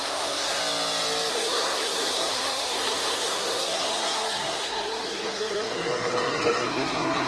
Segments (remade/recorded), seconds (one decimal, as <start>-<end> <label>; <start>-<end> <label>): 0.0-0.6 remade; 0.6-1.3 recorded; 1.3-7.3 remade